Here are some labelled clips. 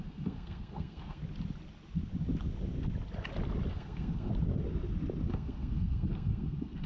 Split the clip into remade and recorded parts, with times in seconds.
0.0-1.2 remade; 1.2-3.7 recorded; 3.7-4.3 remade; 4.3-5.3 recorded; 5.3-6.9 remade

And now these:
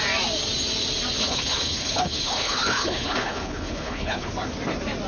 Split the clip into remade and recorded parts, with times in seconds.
0.0-1.2 recorded; 1.2-4.3 remade; 4.3-5.1 recorded

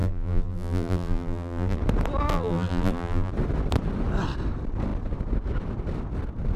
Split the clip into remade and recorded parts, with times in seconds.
0.0-1.8 remade; 1.8-2.3 recorded; 2.3-3.3 remade; 3.3-6.6 recorded

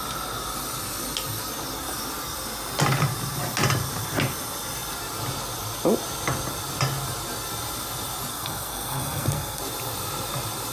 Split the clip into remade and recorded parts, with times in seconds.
0.0-8.3 recorded; 8.3-9.6 remade; 9.6-10.7 recorded